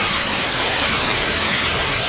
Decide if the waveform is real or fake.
fake